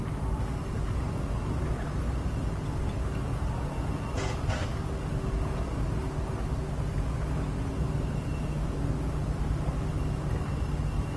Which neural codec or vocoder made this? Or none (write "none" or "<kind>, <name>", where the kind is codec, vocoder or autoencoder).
none